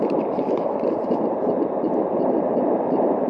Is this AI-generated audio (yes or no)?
yes